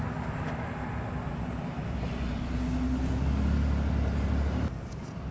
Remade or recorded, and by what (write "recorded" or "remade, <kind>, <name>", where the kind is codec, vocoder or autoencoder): recorded